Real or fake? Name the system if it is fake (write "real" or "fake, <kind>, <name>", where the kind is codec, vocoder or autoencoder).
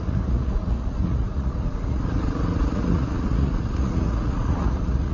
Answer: fake, vocoder, Vocos